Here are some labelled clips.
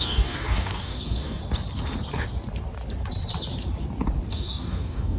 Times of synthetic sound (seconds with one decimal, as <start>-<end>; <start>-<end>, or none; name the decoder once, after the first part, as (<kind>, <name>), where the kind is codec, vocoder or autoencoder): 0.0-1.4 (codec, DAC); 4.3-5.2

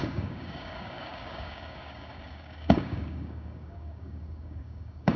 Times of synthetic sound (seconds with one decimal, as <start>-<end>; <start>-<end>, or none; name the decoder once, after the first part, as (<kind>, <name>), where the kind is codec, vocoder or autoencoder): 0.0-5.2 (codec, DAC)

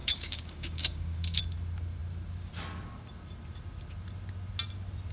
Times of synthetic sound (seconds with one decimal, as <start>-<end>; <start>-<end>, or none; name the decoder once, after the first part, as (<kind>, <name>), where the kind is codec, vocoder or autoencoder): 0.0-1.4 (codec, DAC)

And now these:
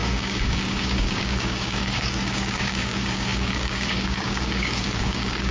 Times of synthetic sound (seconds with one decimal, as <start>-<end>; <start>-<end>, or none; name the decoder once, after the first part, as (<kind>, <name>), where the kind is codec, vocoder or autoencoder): 0.0-5.5 (codec, DAC)

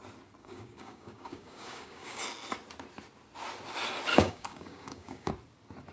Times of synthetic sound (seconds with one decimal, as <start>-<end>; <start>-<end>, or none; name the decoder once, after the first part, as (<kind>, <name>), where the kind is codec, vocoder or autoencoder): 0.4-2.2 (codec, DAC); 4.1-5.3

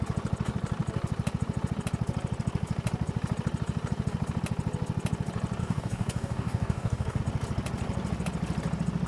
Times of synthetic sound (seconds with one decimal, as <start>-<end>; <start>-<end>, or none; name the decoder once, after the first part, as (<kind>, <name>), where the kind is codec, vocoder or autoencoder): 5.6-7.2 (codec, DAC)